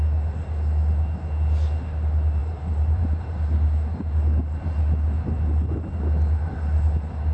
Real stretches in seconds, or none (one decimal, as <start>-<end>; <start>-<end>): 0.0-2.4; 3.4-7.3